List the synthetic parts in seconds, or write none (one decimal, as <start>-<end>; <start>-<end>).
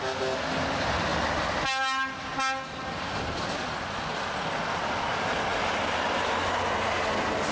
none